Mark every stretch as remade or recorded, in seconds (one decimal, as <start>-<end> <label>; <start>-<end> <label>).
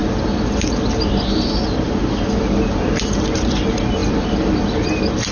0.0-1.9 remade; 1.9-4.0 recorded; 4.0-5.3 remade